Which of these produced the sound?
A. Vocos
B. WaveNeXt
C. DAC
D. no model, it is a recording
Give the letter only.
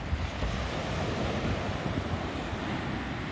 D